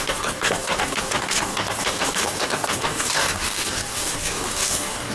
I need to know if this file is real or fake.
fake